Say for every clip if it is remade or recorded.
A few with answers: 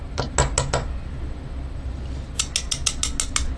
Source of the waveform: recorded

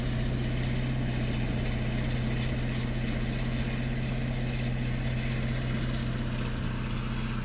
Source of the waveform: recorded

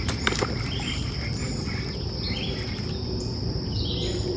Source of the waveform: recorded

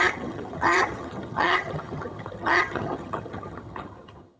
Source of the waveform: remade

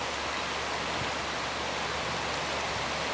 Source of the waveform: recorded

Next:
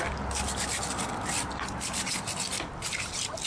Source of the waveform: recorded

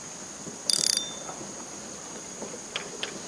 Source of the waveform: remade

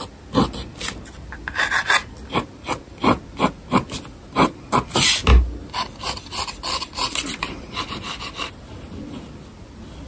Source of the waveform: recorded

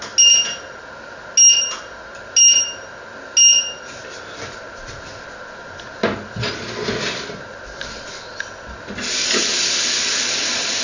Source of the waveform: recorded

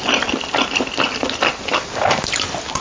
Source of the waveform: recorded